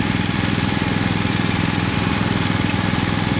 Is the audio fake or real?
fake